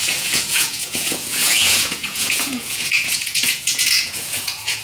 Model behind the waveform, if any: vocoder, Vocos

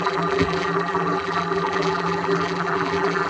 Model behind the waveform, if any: vocoder, BigVGAN v2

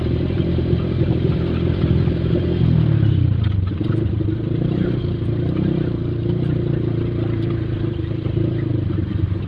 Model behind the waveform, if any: vocoder, BigVGAN v2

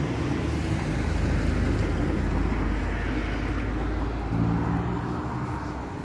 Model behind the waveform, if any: none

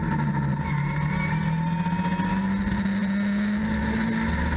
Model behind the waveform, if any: none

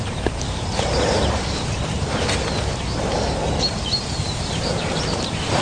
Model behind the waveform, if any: vocoder, BigVGAN v2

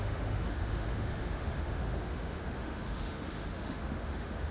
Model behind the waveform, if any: autoencoder, DAC-VAE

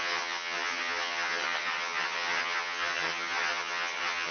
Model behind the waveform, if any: vocoder, HiFi-GAN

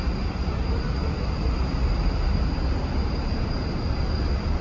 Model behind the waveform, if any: none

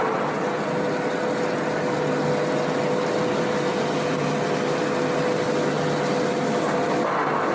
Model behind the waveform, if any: none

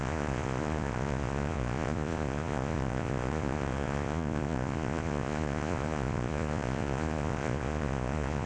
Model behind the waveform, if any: vocoder, Vocos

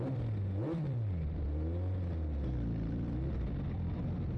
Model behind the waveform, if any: vocoder, BigVGAN v2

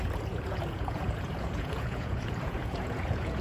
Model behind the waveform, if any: vocoder, Vocos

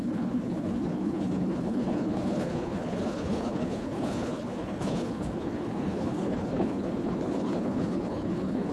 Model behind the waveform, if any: codec, HILCodec